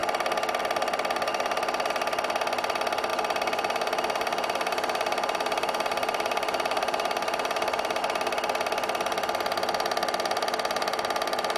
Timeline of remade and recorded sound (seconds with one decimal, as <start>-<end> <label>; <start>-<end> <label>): 0.0-3.1 recorded; 3.1-8.0 remade; 8.0-11.6 recorded